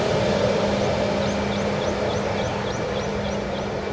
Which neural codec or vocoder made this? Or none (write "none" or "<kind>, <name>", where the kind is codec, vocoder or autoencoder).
none